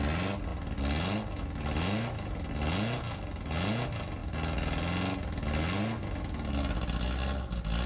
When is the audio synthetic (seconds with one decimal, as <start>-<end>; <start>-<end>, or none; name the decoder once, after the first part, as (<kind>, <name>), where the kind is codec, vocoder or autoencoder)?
none